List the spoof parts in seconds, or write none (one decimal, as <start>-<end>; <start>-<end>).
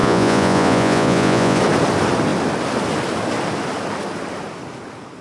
0.0-1.6